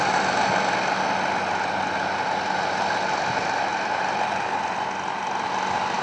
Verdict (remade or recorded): recorded